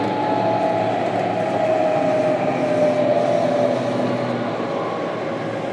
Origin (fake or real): real